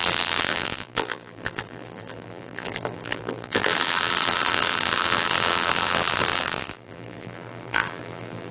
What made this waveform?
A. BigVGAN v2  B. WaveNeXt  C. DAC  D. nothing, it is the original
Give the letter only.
A